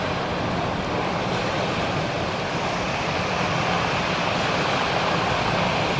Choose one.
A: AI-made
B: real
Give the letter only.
B